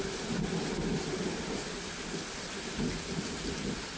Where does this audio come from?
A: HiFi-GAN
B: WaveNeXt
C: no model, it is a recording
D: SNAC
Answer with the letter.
C